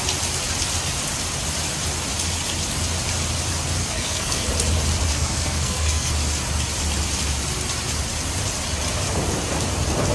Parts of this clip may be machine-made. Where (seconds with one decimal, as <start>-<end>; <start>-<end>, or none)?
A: 3.8-4.5; 5.1-6.1